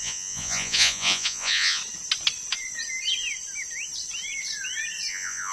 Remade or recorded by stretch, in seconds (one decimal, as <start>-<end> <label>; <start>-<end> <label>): 0.0-1.8 remade; 1.8-5.1 recorded; 5.1-5.5 remade